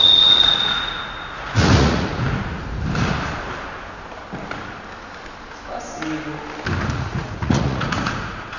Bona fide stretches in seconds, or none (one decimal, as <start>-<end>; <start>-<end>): 2.1-6.9